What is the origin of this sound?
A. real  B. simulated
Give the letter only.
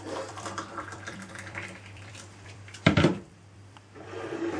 B